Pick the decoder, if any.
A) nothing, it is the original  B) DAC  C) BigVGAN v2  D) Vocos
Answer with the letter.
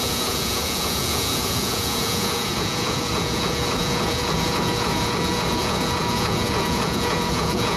D